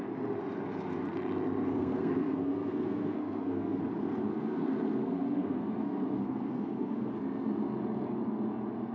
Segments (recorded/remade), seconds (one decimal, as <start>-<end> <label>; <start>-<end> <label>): 0.0-1.7 recorded; 1.7-3.8 remade; 3.8-4.3 recorded; 4.3-7.1 remade; 7.1-8.9 recorded